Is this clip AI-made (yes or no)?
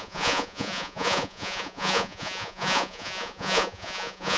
yes